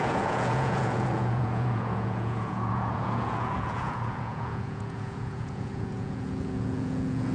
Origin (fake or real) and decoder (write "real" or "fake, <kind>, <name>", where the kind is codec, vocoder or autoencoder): fake, vocoder, Vocos